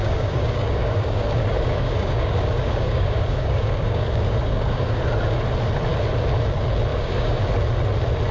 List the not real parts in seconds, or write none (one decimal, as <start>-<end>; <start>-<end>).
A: 0.0-5.0; 6.9-7.4